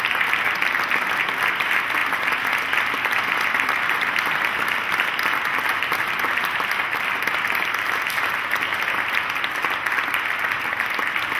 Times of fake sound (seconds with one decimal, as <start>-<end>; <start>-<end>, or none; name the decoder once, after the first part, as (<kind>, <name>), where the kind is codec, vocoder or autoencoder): none